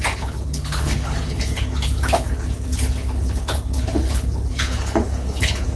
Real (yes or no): no